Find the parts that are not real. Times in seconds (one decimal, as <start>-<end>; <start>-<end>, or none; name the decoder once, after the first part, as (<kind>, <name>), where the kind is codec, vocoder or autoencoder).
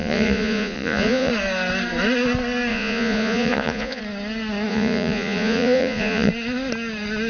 0.0-1.3 (vocoder, Vocos); 2.7-4.0; 4.7-6.3